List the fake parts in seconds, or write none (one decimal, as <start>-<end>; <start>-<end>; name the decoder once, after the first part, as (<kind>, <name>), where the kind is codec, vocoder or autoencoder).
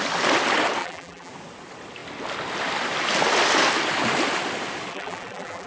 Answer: 0.8-1.3 (vocoder, BigVGAN v2); 4.9-5.7